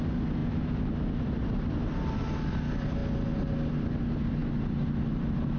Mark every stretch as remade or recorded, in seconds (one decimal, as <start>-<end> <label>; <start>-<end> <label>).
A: 0.0-5.6 recorded

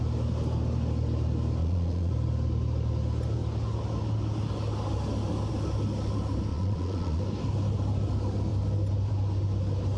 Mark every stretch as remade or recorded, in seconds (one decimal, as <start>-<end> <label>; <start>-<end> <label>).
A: 0.0-1.6 recorded; 1.6-2.1 remade; 2.1-6.5 recorded; 6.5-7.2 remade; 7.2-10.0 recorded

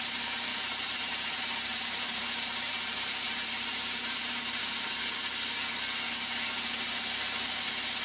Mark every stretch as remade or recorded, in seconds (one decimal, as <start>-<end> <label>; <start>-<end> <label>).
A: 0.0-0.5 recorded; 0.5-4.6 remade; 4.6-8.0 recorded

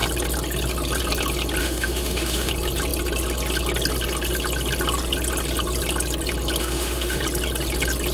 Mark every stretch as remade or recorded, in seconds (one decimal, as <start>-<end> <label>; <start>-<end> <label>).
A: 0.0-1.6 recorded; 1.6-2.5 remade; 2.5-6.6 recorded; 6.6-7.2 remade; 7.2-8.1 recorded

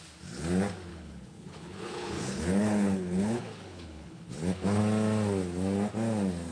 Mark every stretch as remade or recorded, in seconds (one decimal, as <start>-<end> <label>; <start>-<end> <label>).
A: 0.0-0.9 recorded; 0.9-4.8 remade; 4.8-6.5 recorded

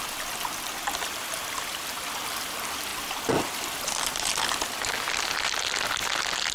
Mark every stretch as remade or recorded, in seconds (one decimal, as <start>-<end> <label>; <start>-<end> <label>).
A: 0.0-6.5 recorded